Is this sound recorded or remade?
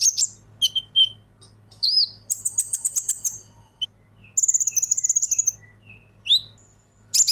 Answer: recorded